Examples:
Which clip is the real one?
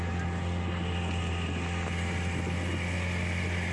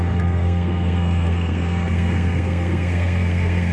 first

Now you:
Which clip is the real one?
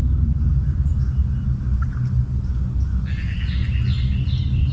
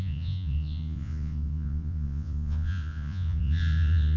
first